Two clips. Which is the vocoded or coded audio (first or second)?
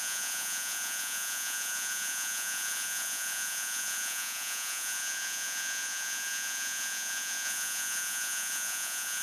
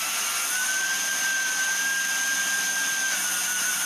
first